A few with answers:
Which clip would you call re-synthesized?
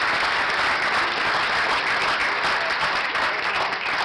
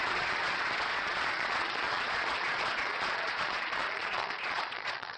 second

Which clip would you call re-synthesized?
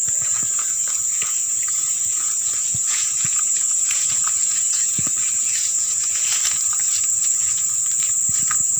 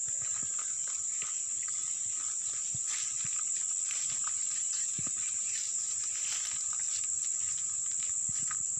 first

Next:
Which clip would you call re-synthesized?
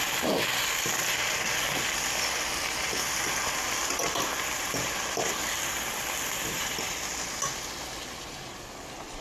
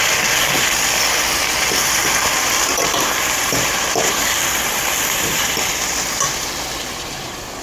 second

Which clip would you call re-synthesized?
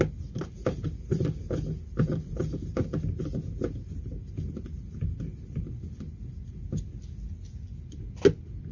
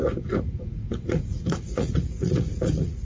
second